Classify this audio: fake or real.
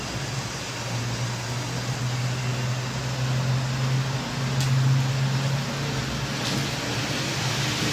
real